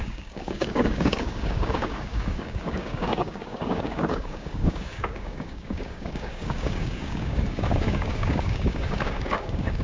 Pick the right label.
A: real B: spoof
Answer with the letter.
B